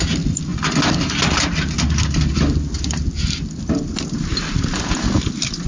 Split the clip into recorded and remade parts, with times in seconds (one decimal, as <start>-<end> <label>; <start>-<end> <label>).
0.0-5.7 recorded